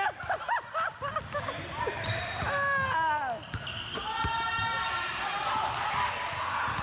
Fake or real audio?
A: real